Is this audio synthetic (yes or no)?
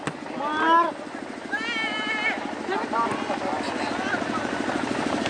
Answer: no